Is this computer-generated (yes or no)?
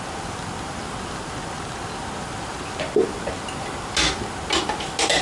no